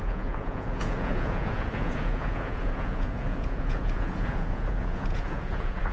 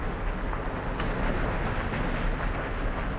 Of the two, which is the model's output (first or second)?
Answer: first